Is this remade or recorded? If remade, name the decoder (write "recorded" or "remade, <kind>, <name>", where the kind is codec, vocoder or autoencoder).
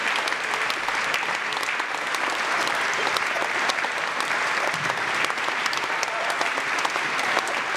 recorded